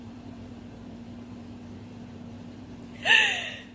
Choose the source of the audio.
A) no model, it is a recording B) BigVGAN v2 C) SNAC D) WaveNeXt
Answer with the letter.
B